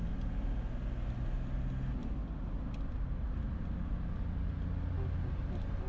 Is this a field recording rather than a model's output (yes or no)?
yes